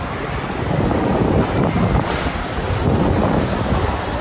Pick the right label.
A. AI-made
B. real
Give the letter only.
B